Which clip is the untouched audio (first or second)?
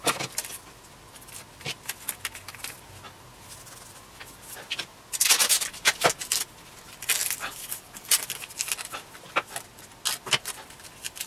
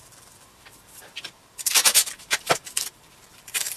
first